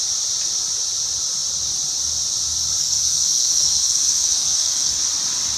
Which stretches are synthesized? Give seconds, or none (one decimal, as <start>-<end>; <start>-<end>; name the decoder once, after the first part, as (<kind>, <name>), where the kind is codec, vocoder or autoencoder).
2.8-5.0 (codec, SNAC)